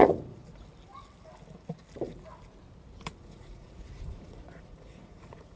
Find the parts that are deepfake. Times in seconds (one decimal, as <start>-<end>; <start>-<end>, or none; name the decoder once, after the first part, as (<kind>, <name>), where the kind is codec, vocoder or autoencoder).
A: 0.0-0.4 (vocoder, Vocos); 3.3-5.6